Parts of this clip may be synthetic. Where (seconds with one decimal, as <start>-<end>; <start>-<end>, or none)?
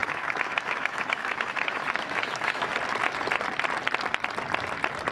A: 0.0-2.7